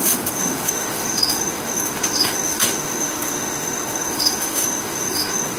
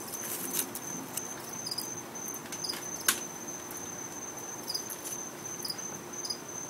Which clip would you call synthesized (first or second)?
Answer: first